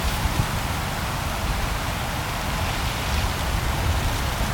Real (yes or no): yes